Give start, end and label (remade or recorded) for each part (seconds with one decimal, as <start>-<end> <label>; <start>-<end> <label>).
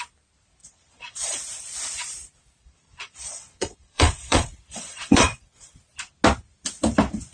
0.0-0.6 recorded; 0.6-1.4 remade; 1.4-2.6 recorded; 2.6-5.8 remade; 5.8-7.3 recorded